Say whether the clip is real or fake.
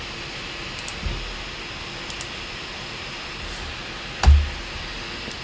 real